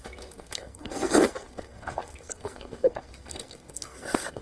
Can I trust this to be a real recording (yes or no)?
no